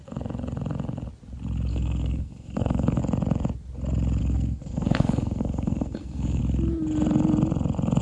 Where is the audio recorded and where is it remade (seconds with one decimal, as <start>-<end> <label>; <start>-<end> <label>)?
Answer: 0.0-1.7 recorded; 1.7-3.0 remade; 3.0-4.2 recorded; 4.2-6.4 remade; 6.4-8.0 recorded